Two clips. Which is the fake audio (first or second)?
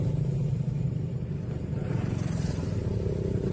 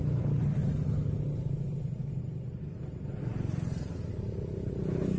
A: first